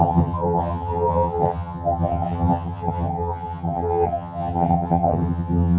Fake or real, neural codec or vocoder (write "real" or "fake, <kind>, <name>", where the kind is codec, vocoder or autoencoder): fake, vocoder, HiFi-GAN